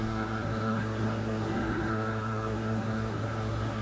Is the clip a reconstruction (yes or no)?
yes